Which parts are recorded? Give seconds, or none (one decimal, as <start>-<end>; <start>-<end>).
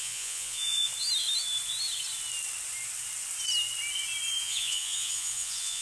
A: 0.9-4.4